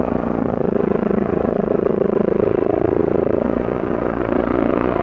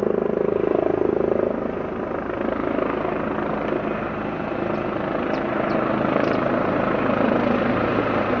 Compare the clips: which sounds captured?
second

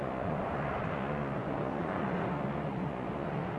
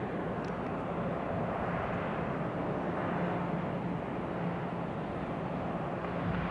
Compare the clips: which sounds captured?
second